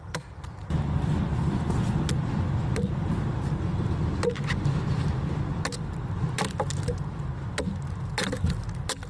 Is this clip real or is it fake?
real